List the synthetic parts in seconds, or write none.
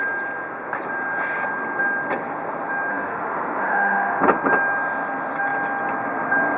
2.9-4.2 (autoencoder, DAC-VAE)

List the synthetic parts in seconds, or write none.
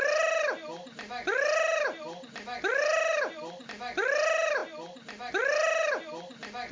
none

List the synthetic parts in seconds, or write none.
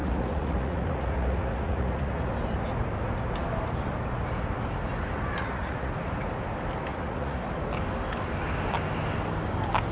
0.0-2.3 (vocoder, Vocos); 5.4-5.9; 6.9-7.5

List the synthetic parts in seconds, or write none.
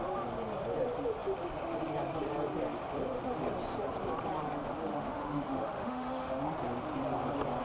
4.9-6.4 (autoencoder, DAC-VAE)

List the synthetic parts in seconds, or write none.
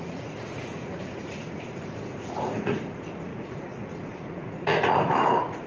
0.0-5.7 (vocoder, Vocos)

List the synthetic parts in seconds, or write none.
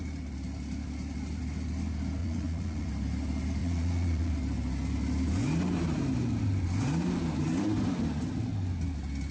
2.2-2.9 (vocoder, Vocos); 3.6-4.3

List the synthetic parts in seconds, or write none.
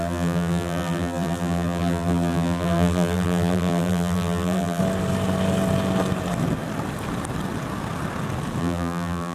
0.0-4.8 (vocoder, BigVGAN v2); 8.6-9.3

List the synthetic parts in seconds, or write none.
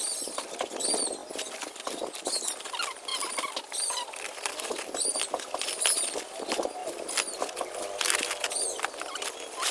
3.1-5.3 (vocoder, BigVGAN v2)